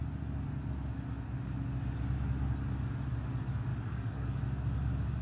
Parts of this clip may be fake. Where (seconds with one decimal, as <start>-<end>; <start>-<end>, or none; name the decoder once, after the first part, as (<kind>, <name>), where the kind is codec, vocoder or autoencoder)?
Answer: 3.7-4.4 (codec, DAC)